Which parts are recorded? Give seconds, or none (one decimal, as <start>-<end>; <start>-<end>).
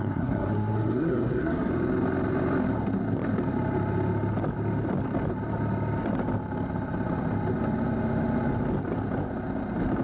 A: 1.7-10.0